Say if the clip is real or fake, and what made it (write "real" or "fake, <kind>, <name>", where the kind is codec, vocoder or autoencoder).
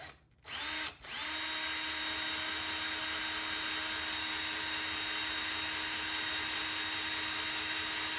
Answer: real